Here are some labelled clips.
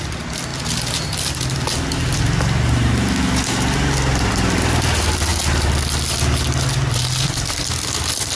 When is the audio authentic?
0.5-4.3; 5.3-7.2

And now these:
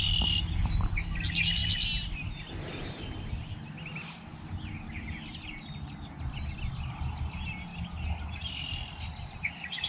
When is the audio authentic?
0.0-9.9

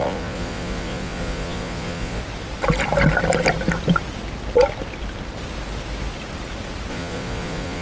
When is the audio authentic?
2.2-6.9

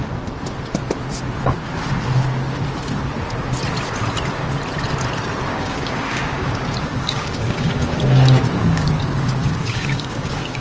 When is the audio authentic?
0.0-5.5

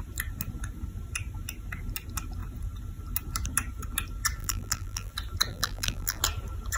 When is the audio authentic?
0.0-4.4; 5.1-5.5; 6.2-6.8